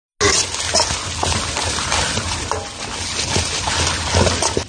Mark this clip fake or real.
real